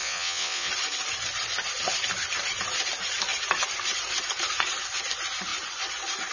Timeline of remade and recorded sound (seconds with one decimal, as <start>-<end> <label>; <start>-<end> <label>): 0.0-0.7 remade; 0.7-6.3 recorded

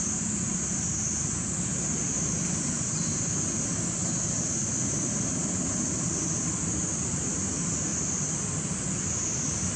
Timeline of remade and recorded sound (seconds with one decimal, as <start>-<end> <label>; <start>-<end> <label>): 0.0-0.5 recorded; 0.5-1.0 remade; 1.0-1.7 recorded; 1.7-3.3 remade; 3.3-4.0 recorded; 4.0-6.8 remade; 6.8-7.9 recorded; 7.9-8.8 remade; 8.8-9.8 recorded